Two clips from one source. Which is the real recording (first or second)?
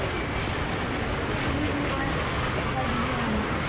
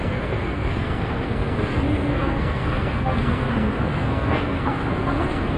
first